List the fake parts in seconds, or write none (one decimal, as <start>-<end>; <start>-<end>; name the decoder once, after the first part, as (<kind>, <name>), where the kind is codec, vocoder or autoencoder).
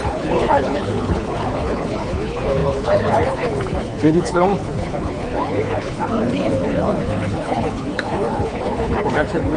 0.0-9.6 (codec, HILCodec)